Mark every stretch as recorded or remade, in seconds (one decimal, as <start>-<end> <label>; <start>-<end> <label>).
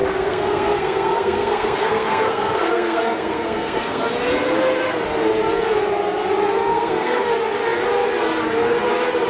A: 0.0-4.0 remade; 4.0-6.7 recorded; 6.7-7.2 remade; 7.2-9.3 recorded